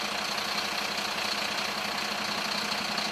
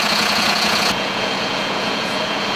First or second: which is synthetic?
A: second